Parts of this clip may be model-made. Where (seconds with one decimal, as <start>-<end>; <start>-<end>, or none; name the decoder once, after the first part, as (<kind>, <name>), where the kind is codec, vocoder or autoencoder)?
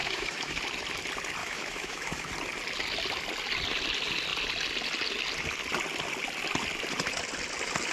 0.0-0.6 (autoencoder, DAC-VAE); 1.4-2.3